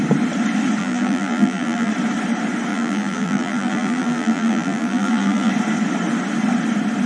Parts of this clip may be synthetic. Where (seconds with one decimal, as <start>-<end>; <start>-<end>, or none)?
0.8-1.9; 2.7-5.5